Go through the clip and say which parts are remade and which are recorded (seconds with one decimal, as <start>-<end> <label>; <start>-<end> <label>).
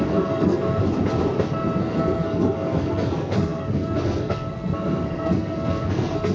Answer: 0.0-0.8 remade; 0.8-1.8 recorded; 1.8-6.3 remade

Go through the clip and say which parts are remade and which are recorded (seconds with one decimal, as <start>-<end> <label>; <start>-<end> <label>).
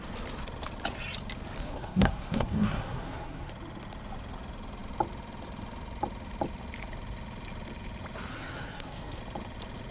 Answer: 0.0-1.6 recorded; 1.6-3.5 remade; 3.5-8.3 recorded; 8.3-9.2 remade; 9.2-9.9 recorded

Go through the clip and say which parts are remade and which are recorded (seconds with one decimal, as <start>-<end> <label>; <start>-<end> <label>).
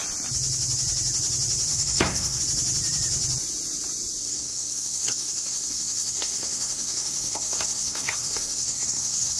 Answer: 0.0-1.7 recorded; 1.7-2.4 remade; 2.4-4.2 recorded; 4.2-9.4 remade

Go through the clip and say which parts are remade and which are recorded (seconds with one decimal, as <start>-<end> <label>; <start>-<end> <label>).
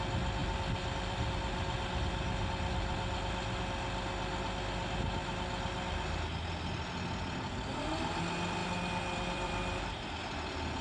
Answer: 0.0-0.4 recorded; 0.4-1.3 remade; 1.3-8.6 recorded; 8.6-9.8 remade; 9.8-10.8 recorded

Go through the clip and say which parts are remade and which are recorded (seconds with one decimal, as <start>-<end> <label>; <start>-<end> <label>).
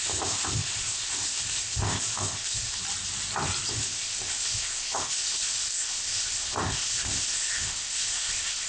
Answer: 0.0-2.8 remade; 2.8-3.7 recorded; 3.7-8.7 remade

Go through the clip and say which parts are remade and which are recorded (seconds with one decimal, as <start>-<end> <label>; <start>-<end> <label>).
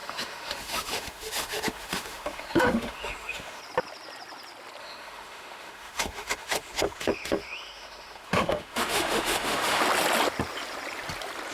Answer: 0.0-3.6 remade; 3.6-4.8 recorded; 4.8-9.8 remade; 9.8-11.5 recorded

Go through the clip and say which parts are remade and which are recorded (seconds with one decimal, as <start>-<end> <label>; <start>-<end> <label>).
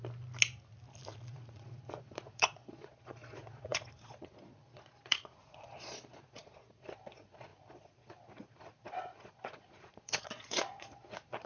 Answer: 0.0-1.3 recorded; 1.3-11.5 remade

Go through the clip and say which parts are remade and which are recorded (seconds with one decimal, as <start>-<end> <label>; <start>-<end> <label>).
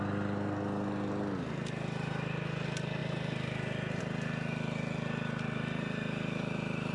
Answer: 0.0-6.9 recorded